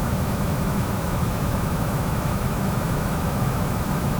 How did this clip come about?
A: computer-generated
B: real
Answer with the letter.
A